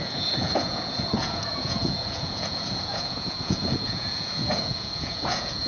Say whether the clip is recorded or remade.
remade